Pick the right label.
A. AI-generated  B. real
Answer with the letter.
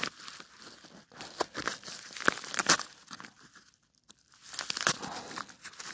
B